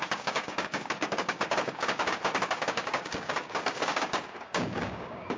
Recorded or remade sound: remade